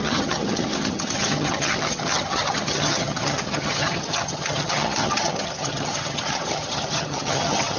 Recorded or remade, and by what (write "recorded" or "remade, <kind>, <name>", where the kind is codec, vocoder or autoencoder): remade, vocoder, HiFi-GAN